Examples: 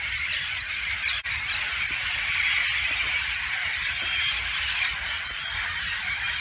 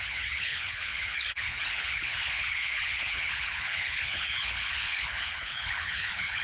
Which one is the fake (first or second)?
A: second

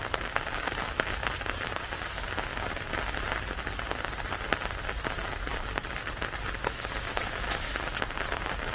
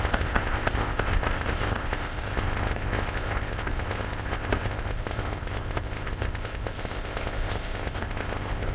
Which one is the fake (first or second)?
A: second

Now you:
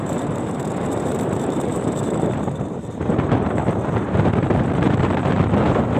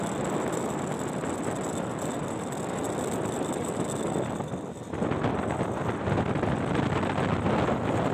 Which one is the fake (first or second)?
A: first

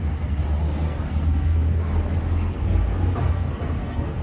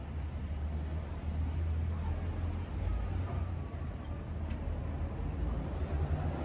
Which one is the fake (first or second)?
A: first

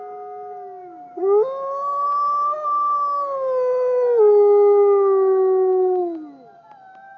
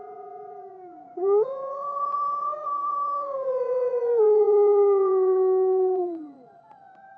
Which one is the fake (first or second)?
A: second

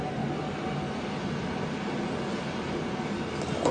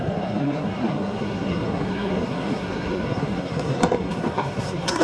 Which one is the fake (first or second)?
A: second